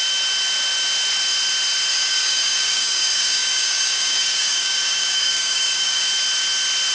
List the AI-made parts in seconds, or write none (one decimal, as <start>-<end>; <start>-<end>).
1.9-6.0